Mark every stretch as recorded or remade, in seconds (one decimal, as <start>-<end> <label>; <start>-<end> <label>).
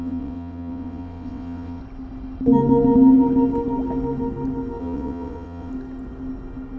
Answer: 0.0-1.8 remade; 1.8-4.8 recorded; 4.8-5.7 remade; 5.7-6.8 recorded